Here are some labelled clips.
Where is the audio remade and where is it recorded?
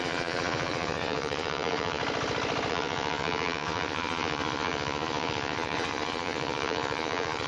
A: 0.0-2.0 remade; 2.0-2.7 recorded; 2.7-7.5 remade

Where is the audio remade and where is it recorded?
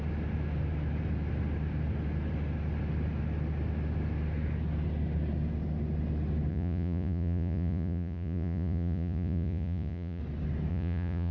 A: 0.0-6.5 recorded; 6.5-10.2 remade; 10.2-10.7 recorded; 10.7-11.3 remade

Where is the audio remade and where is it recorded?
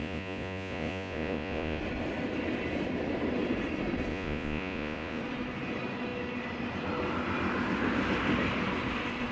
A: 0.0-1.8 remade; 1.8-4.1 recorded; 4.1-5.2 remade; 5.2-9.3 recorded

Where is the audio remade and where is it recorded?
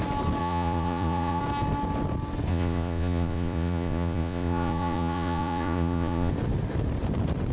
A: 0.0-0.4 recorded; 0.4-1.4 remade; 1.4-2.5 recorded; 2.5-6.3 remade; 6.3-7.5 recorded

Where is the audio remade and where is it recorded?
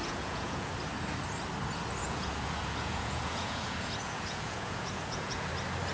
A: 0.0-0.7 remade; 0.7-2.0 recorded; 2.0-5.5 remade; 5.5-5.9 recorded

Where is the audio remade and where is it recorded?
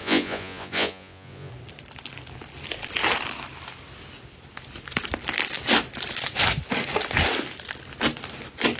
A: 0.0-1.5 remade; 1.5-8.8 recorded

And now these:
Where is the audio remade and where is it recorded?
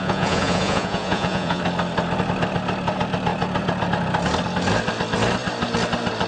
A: 0.0-1.6 remade; 1.6-6.3 recorded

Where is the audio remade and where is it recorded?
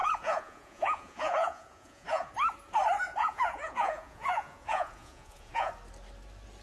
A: 0.0-2.3 remade; 2.3-3.1 recorded; 3.1-5.7 remade; 5.7-6.6 recorded